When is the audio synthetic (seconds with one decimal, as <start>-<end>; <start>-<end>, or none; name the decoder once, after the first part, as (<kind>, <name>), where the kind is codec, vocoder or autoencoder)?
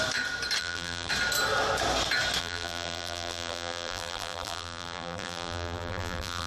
0.6-1.1 (vocoder, BigVGAN v2); 2.4-6.5